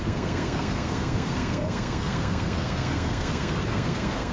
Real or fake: fake